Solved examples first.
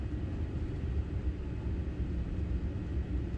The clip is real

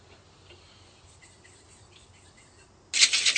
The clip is real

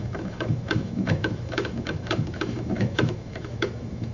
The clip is fake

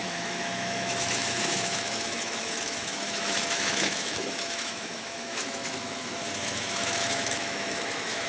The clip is fake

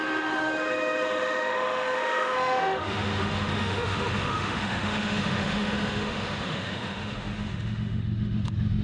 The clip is fake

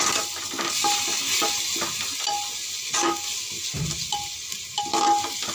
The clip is real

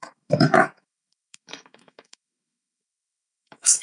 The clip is fake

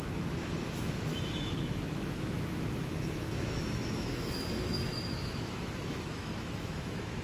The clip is fake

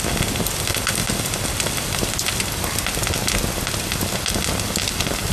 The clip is real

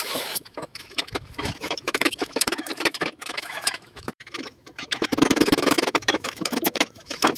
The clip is fake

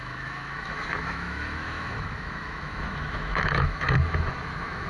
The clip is fake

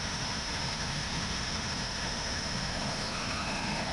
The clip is fake